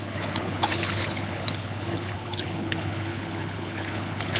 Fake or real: fake